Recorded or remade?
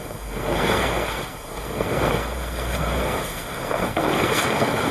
remade